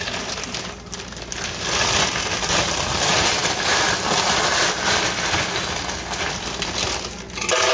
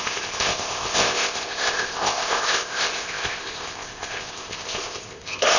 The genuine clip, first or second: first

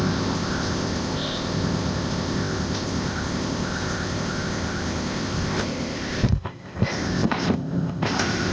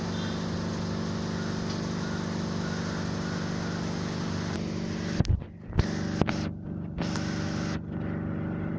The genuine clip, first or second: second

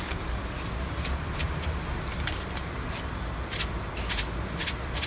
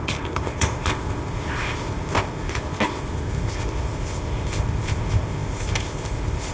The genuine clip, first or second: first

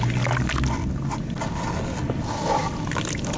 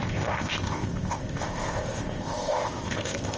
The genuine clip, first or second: first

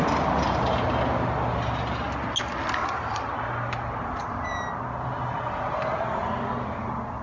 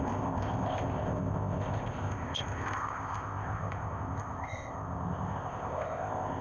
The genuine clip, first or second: first